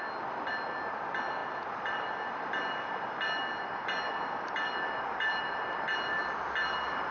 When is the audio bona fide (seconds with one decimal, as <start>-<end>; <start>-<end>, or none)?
0.0-7.1